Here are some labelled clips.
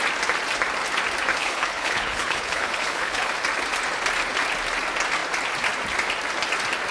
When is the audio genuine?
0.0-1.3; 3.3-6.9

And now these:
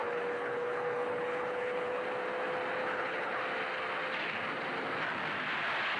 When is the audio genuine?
2.0-2.8; 3.4-6.0

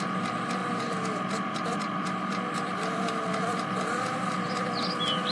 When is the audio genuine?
0.0-5.3

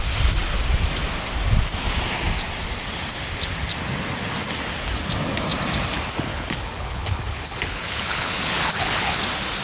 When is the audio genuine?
0.0-6.3; 9.2-9.6

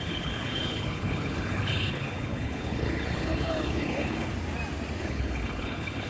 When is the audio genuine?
4.3-5.0